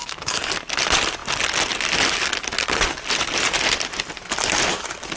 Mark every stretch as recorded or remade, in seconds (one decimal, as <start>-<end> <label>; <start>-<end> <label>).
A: 0.0-0.5 remade; 0.5-5.2 recorded